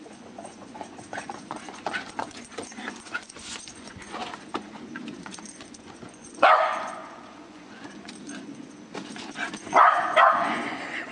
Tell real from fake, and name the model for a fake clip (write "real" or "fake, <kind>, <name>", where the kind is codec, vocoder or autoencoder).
fake, vocoder, Vocos